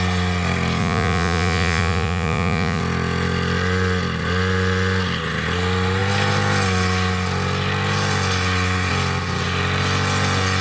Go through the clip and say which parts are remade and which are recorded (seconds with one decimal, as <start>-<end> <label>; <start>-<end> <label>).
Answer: 0.0-0.8 recorded; 0.8-2.8 remade; 2.8-10.6 recorded